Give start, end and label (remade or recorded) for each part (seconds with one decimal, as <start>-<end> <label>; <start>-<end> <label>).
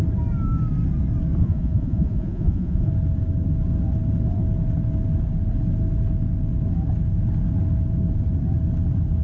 0.0-1.4 recorded; 1.4-2.9 remade; 2.9-9.2 recorded